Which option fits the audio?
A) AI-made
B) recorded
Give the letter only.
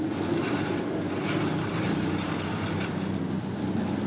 B